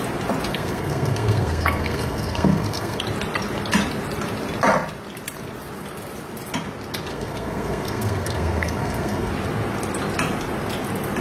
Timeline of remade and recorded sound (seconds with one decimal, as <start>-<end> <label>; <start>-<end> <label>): 0.0-0.5 recorded; 0.5-3.0 remade; 3.0-7.1 recorded; 7.1-9.3 remade; 9.3-11.2 recorded